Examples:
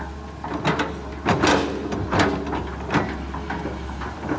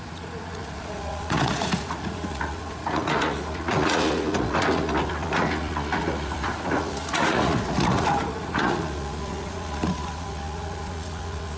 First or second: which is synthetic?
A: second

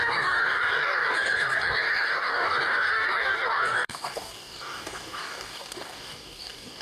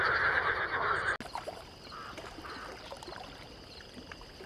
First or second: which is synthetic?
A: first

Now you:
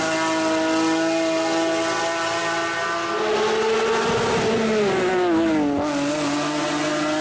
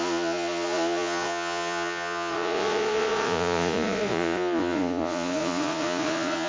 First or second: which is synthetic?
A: second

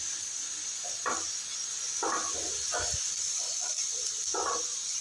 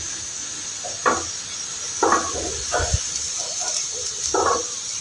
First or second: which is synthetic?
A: second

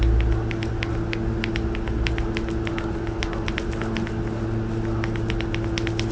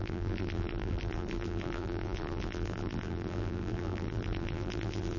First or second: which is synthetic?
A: second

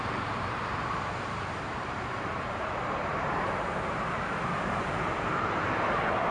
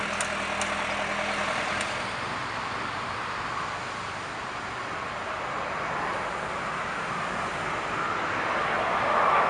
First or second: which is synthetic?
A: first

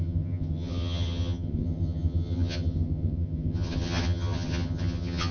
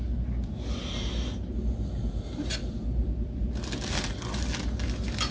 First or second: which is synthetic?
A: first